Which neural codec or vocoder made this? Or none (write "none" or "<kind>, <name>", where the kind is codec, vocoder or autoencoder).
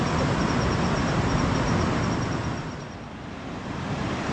none